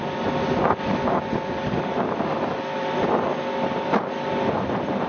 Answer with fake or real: real